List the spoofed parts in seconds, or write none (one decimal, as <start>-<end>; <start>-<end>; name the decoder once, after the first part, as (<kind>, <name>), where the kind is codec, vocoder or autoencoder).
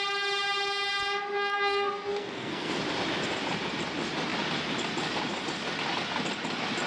1.4-2.8 (codec, SNAC)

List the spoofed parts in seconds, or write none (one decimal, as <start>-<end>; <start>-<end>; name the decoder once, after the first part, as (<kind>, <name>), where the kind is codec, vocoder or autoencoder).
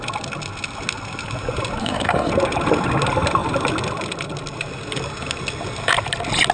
1.8-2.3 (codec, SNAC)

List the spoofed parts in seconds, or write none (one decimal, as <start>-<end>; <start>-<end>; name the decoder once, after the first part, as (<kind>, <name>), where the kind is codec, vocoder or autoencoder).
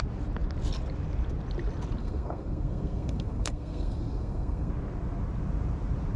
2.0-4.7 (codec, SNAC)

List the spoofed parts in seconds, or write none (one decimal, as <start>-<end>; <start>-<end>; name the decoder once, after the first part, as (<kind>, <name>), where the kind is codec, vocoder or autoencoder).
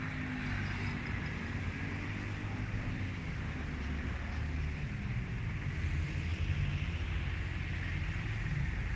none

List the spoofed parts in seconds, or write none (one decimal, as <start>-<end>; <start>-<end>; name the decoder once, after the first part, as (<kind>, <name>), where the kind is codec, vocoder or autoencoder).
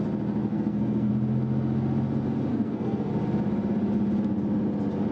0.4-1.1 (codec, SNAC); 2.5-3.1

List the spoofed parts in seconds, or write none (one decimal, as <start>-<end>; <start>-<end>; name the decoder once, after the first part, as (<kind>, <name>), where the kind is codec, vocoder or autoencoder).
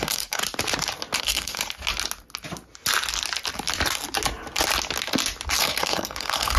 0.0-0.4 (codec, SNAC); 1.2-1.6; 5.6-6.6